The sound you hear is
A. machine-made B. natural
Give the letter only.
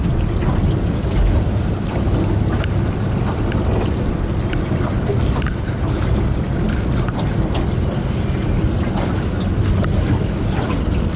B